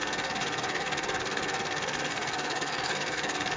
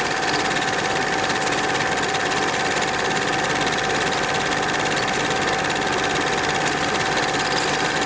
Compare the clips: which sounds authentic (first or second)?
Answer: second